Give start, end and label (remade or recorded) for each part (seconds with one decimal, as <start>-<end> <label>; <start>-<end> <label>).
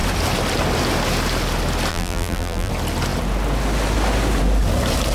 0.0-1.9 recorded; 1.9-2.7 remade; 2.7-5.1 recorded